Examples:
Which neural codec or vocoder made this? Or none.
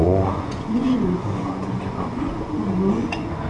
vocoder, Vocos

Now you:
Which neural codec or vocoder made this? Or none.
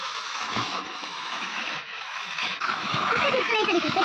autoencoder, DAC-VAE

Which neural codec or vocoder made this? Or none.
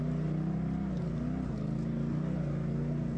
none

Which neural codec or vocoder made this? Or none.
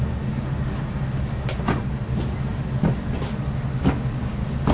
none